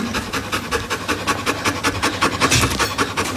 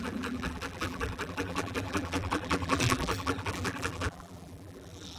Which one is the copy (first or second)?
second